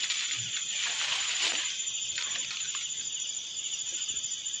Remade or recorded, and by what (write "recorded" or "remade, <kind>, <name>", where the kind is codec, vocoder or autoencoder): recorded